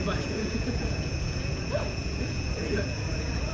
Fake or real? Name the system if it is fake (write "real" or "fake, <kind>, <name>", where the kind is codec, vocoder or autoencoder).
fake, vocoder, Vocos